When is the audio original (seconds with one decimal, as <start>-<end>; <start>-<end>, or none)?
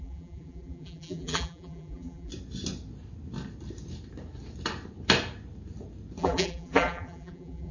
2.3-6.2